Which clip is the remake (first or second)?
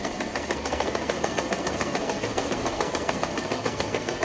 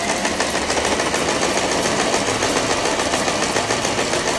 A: first